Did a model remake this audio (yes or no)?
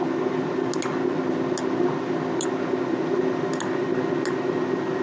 no